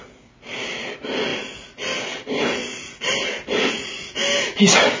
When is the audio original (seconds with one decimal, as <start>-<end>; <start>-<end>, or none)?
0.0-5.0